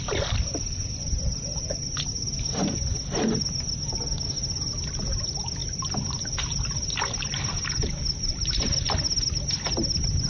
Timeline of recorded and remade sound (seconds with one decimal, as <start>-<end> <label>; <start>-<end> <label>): 0.0-10.3 recorded

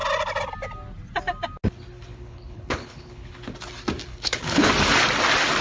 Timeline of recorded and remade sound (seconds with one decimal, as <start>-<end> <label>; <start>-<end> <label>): 0.0-2.1 recorded; 2.1-3.4 remade; 3.4-4.1 recorded; 4.1-4.7 remade; 4.7-5.6 recorded

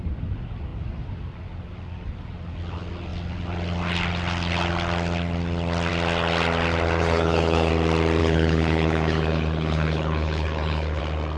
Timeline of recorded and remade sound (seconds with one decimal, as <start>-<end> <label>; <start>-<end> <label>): 0.0-7.0 recorded; 7.0-7.7 remade; 7.7-8.2 recorded; 8.2-11.0 remade; 11.0-11.4 recorded

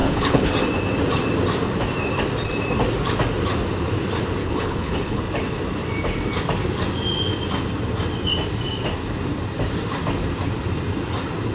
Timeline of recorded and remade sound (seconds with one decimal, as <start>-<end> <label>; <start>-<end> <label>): 0.0-0.5 remade; 0.5-4.4 recorded; 4.4-5.2 remade; 5.2-11.5 recorded